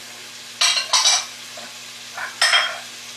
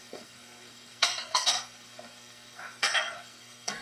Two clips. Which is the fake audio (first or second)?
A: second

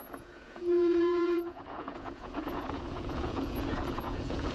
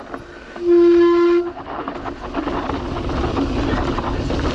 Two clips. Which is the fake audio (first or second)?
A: first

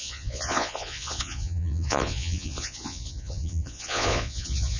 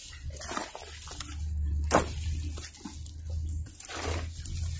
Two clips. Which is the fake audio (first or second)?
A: first